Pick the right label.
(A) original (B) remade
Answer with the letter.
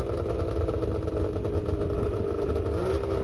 A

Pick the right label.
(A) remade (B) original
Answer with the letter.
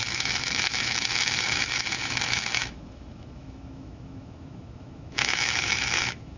A